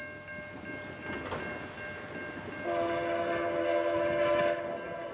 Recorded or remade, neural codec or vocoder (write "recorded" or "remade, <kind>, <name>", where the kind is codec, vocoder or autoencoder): recorded